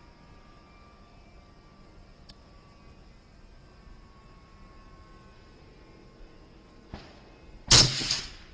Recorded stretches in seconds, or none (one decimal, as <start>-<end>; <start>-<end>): 0.0-8.5